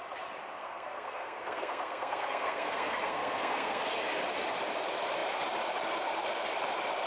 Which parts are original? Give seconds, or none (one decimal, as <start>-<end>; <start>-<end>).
0.0-0.6; 3.8-7.1